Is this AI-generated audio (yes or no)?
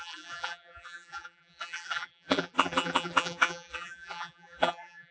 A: yes